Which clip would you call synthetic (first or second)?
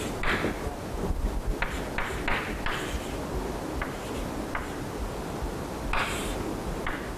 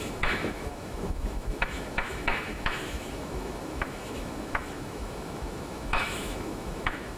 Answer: second